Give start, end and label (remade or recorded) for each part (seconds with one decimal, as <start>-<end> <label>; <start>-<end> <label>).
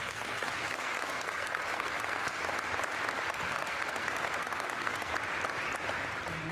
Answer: 0.0-2.4 remade; 2.4-3.3 recorded; 3.3-5.1 remade; 5.1-6.5 recorded